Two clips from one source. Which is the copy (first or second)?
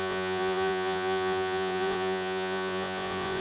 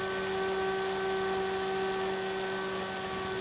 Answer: first